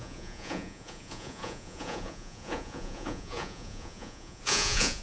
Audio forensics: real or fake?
fake